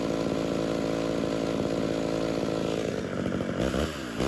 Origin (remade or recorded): recorded